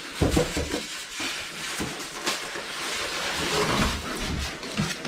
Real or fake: real